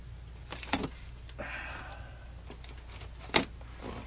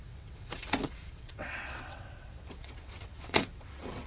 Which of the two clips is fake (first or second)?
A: second